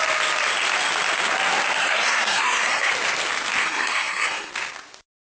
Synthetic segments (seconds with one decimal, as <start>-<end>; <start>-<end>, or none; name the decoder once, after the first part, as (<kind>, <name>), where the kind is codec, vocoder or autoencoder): 1.8-2.9 (codec, SNAC); 3.6-4.5